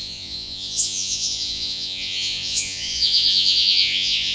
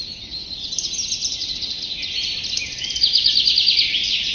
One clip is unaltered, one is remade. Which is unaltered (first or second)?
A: second